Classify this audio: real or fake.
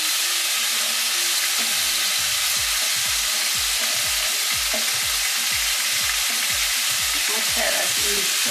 real